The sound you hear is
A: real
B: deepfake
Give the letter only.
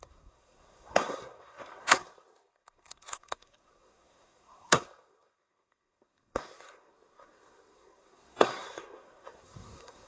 B